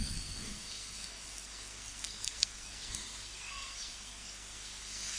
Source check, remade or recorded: remade